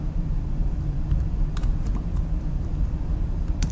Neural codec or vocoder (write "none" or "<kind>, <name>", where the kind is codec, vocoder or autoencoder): vocoder, BigVGAN v2